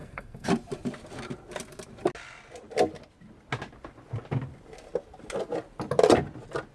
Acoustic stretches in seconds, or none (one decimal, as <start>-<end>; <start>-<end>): 0.5-6.7